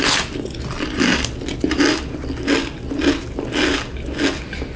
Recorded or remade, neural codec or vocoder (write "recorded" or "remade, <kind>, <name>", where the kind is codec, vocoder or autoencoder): recorded